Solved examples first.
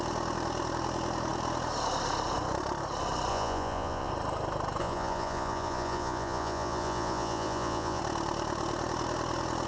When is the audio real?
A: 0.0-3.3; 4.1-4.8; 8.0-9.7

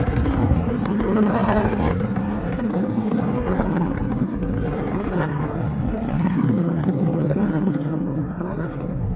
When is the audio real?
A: none

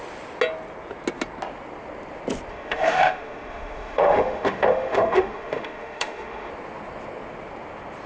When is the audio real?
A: 0.0-2.5; 6.5-8.1

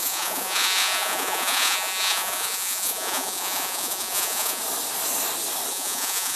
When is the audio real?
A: 4.6-5.7

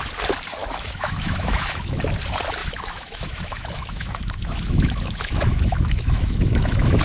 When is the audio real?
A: 0.0-0.6; 2.0-2.6

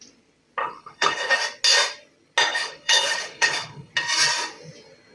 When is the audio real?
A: 0.0-0.6; 1.3-2.5; 3.9-5.1